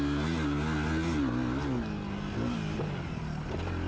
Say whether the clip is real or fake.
real